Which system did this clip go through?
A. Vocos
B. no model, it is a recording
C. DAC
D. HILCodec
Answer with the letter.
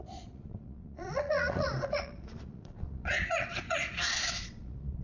A